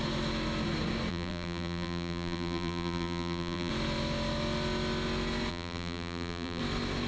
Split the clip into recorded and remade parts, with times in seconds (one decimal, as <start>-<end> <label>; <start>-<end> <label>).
0.0-1.1 recorded; 1.1-3.7 remade; 3.7-5.5 recorded; 5.5-6.6 remade; 6.6-7.1 recorded